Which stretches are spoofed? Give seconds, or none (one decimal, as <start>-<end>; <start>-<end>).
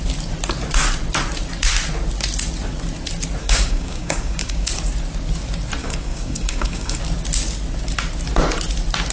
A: 3.4-4.7; 5.8-7.0